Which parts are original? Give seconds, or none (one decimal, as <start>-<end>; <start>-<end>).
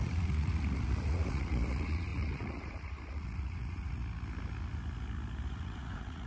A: 4.0-5.5